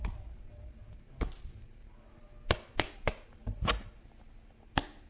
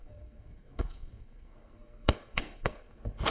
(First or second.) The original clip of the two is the first